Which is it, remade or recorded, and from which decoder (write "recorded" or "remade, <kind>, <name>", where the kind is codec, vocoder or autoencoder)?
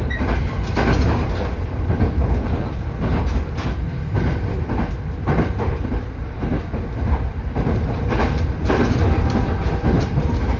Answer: recorded